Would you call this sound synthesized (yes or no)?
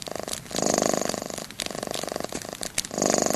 no